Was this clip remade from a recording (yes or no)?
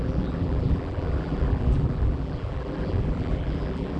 yes